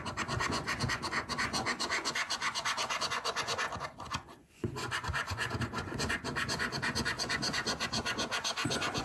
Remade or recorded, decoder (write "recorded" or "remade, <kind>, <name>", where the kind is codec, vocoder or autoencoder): remade, vocoder, Vocos